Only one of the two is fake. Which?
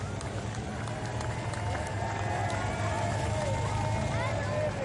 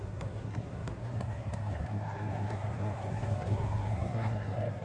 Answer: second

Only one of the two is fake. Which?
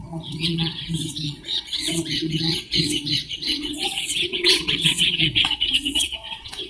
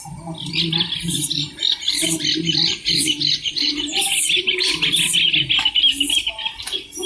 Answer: first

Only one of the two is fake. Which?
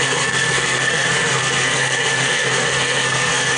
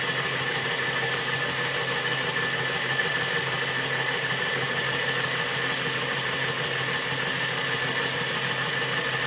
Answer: first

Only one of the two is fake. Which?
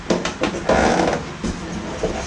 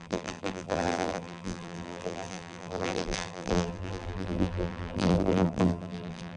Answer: second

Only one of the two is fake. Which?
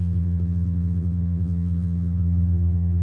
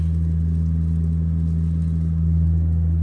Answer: first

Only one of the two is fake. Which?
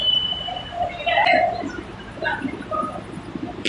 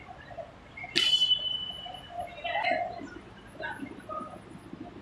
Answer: first